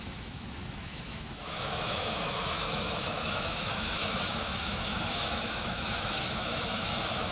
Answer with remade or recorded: remade